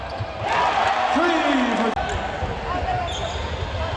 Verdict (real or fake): real